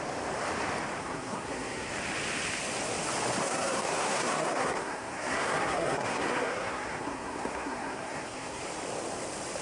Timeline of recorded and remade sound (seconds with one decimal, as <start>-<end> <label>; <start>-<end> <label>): 0.0-1.0 recorded; 1.0-1.9 remade; 1.9-3.4 recorded; 3.4-8.6 remade; 8.6-9.6 recorded